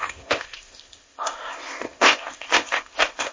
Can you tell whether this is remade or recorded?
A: remade